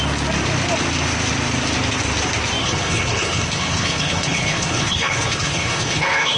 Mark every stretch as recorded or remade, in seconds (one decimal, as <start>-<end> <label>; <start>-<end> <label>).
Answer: 0.0-2.6 recorded; 2.6-6.4 remade